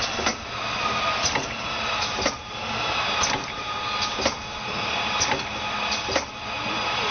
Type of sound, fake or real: real